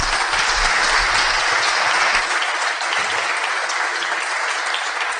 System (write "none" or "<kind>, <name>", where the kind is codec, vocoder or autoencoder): none